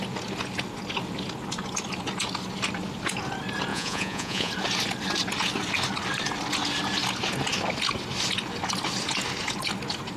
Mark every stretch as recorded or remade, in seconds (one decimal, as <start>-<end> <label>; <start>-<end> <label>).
0.0-3.7 recorded; 3.7-4.5 remade; 4.5-10.2 recorded